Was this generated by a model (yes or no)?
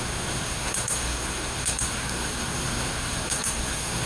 yes